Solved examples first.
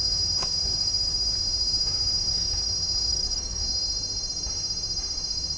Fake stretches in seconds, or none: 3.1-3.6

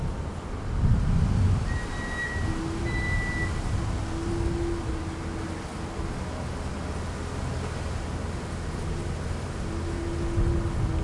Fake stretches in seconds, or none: none

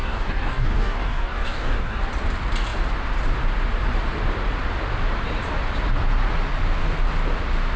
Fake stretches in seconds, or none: 0.0-2.0

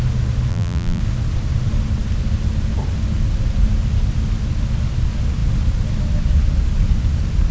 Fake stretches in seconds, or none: 0.5-1.0

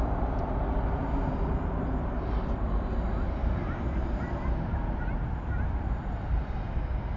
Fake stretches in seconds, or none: 3.4-6.7

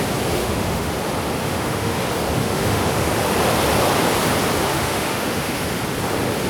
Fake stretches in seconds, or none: 0.4-0.9; 1.4-2.0; 2.4-3.1; 4.7-5.7

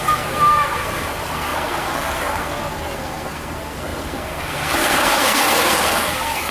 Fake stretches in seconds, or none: 0.0-6.5

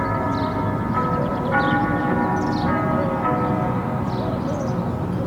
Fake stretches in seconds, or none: 1.3-2.0